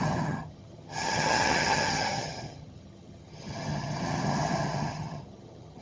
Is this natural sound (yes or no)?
no